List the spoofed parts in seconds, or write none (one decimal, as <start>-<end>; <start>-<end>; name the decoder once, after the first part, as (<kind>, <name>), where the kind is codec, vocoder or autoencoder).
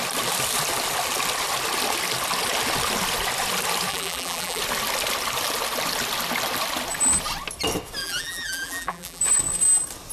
3.9-4.6 (vocoder, BigVGAN v2); 8.0-9.2